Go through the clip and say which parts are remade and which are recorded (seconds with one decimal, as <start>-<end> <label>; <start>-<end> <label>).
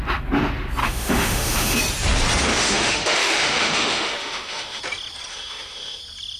0.0-0.8 recorded; 0.8-1.8 remade; 1.8-2.5 recorded; 2.5-4.8 remade; 4.8-5.3 recorded; 5.3-6.0 remade; 6.0-6.4 recorded